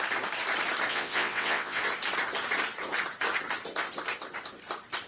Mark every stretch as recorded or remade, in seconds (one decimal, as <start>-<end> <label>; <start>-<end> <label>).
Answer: 0.0-0.9 recorded; 0.9-1.8 remade; 1.8-5.1 recorded